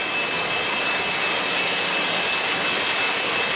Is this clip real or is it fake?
real